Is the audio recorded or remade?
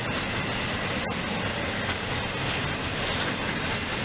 recorded